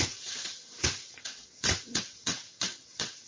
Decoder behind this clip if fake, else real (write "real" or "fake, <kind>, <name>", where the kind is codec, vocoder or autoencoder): fake, vocoder, WaveNeXt